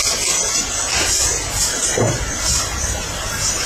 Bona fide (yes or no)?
yes